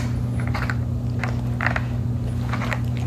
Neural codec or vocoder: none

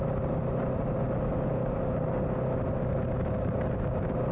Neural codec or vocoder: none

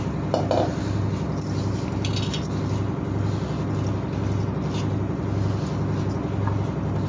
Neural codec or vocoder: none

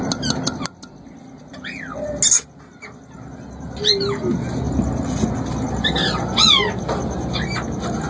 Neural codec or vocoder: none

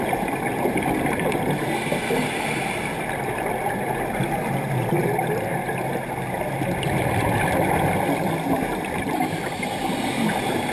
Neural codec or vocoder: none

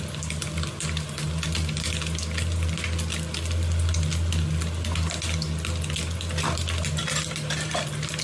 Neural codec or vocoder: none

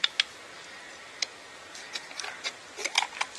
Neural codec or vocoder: none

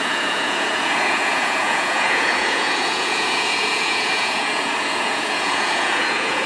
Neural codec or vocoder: vocoder, Vocos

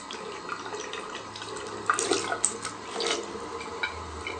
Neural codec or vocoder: none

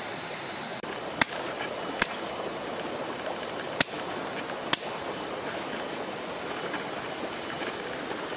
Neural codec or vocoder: none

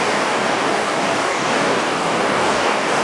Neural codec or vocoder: codec, DAC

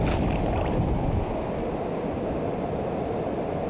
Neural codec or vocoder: none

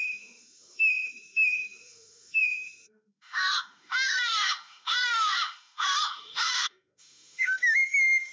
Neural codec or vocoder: autoencoder, DAC-VAE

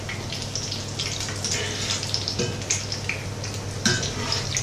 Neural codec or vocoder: none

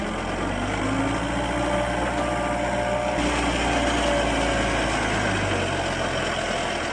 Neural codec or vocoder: none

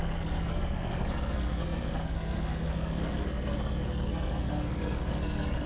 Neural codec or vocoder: codec, SNAC